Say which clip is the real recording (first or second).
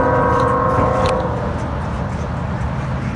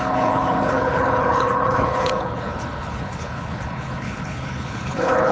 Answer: first